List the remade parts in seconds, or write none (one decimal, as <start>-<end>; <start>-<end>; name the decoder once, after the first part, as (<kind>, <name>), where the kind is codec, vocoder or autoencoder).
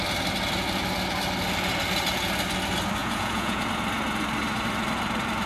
3.0-3.7 (vocoder, Vocos)